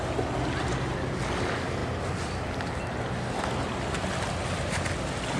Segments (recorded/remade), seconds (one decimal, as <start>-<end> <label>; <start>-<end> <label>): 0.0-5.4 recorded